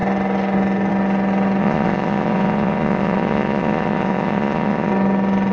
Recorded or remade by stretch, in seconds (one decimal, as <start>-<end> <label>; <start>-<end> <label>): 0.0-1.6 recorded; 1.6-4.9 remade; 4.9-5.5 recorded